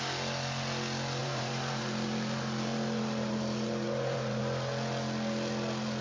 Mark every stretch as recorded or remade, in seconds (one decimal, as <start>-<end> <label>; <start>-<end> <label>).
0.0-1.2 recorded; 1.2-4.4 remade; 4.4-6.0 recorded